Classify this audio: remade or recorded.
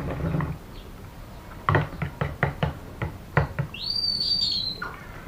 remade